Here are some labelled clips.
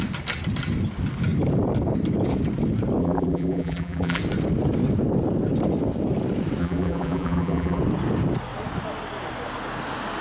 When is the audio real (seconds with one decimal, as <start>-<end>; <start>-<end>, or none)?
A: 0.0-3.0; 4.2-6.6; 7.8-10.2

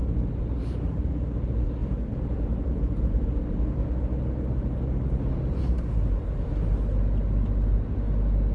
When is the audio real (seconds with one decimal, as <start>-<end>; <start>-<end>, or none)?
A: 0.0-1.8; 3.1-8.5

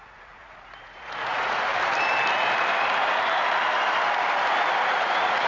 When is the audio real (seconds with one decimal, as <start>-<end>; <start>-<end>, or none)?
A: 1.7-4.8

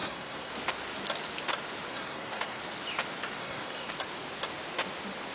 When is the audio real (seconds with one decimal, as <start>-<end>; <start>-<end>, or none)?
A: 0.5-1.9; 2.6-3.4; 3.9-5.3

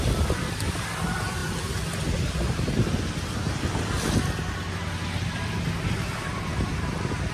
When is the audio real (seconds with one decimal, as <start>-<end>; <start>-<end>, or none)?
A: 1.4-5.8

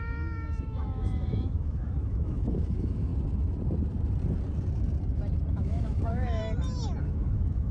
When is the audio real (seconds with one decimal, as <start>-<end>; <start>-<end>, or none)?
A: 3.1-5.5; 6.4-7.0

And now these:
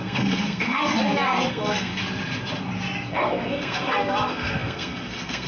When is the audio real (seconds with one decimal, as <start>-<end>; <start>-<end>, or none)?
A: 0.9-1.5; 1.9-3.1